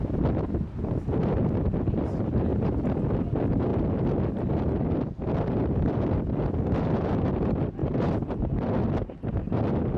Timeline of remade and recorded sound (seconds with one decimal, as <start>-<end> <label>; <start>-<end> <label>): 0.0-2.5 recorded; 2.5-3.0 remade; 3.0-7.8 recorded; 7.8-8.4 remade; 8.4-10.0 recorded